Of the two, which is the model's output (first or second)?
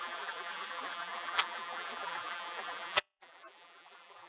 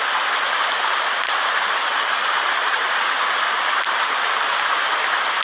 first